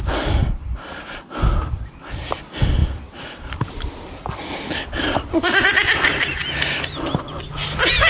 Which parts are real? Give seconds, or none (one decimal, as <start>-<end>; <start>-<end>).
0.0-2.8; 7.4-8.1